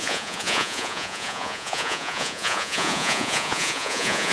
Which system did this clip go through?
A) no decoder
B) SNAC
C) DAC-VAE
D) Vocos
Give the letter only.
D